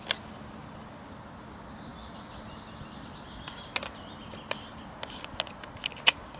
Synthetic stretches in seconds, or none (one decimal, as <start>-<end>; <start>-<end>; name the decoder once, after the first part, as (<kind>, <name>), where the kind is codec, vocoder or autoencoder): none